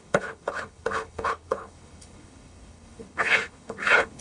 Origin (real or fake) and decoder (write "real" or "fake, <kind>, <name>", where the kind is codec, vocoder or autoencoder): fake, codec, HILCodec